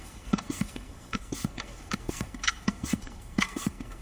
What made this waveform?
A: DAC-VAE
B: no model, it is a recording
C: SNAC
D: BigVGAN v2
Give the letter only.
C